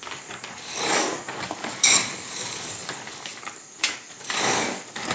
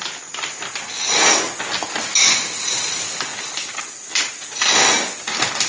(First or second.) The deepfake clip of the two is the first